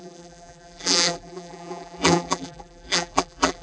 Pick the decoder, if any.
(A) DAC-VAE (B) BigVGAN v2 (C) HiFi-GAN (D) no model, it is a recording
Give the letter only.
B